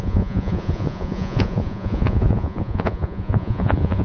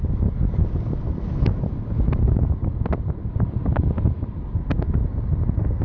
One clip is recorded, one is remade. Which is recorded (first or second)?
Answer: second